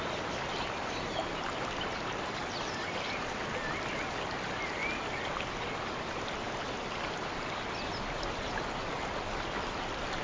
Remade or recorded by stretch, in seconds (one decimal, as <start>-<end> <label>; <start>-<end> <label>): 0.0-10.2 recorded